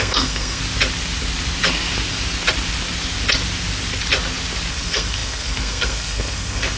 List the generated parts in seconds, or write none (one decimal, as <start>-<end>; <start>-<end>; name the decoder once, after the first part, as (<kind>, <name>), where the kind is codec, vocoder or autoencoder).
0.0-0.6 (codec, SNAC); 4.7-6.8